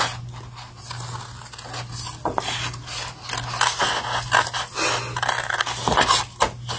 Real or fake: real